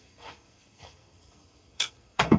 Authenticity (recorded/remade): remade